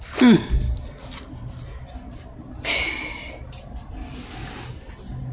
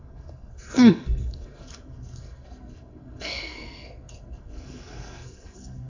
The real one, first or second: first